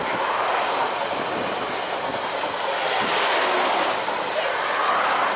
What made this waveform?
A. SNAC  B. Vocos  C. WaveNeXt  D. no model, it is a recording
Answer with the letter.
D